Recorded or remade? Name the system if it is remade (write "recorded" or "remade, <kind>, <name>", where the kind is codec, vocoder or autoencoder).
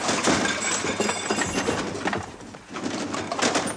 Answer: recorded